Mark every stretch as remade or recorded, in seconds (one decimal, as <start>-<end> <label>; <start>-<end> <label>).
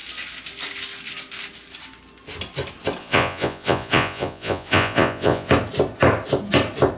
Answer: 0.0-3.0 recorded; 3.0-5.5 remade; 5.5-7.0 recorded